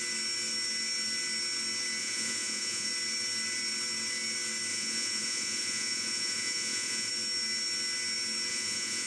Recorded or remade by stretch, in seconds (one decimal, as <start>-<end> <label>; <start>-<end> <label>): 0.0-2.0 recorded; 2.0-2.9 remade; 2.9-4.7 recorded; 4.7-7.1 remade; 7.1-8.5 recorded; 8.5-9.1 remade